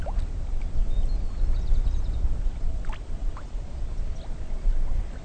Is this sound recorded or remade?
recorded